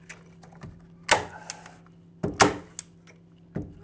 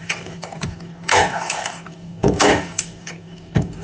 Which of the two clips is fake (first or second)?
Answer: second